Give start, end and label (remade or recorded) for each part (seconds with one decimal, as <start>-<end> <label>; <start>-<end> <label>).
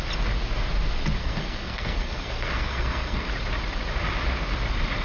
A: 0.0-1.2 recorded; 1.2-3.3 remade; 3.3-5.0 recorded